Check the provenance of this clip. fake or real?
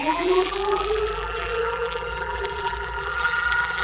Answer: fake